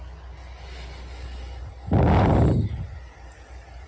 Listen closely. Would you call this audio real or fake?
real